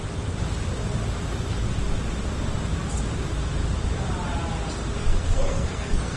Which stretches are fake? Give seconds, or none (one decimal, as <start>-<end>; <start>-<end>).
5.0-6.2